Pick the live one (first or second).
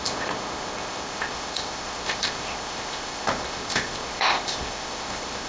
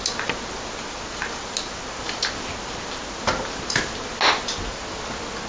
second